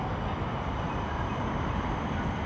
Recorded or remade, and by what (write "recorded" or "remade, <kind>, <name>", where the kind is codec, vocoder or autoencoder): recorded